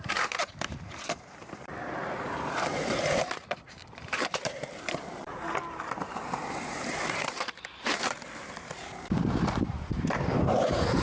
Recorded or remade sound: remade